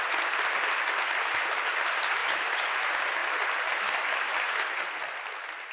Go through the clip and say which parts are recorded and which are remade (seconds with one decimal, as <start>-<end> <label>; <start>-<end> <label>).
0.0-2.2 recorded; 2.2-2.8 remade; 2.8-5.7 recorded